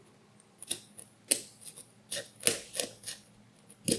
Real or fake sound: real